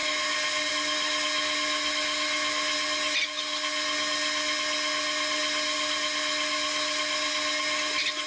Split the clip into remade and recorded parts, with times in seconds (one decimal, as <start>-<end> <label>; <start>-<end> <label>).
0.0-8.3 recorded